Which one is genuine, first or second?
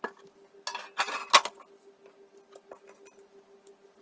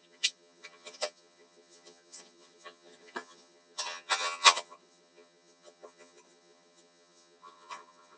first